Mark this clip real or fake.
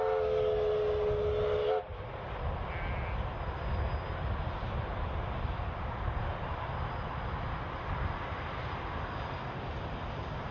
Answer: real